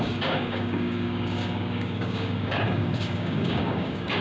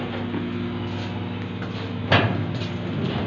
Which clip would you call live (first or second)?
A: second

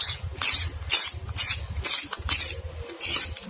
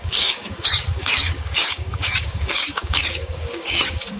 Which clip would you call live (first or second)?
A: first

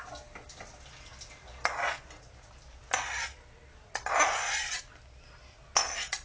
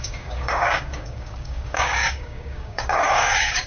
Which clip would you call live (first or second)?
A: first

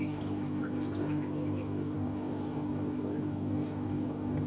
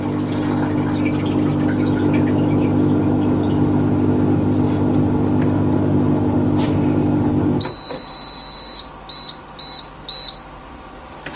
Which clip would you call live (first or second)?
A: second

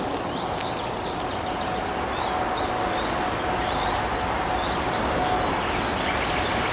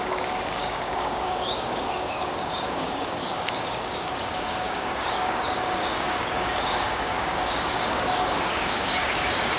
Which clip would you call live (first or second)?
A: first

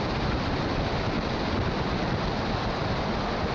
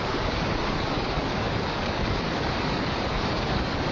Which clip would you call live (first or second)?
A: first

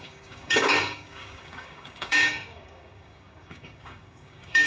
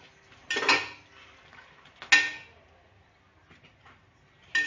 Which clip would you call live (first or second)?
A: second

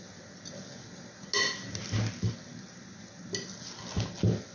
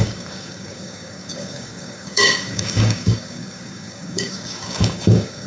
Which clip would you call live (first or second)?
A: first